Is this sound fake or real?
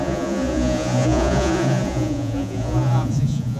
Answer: fake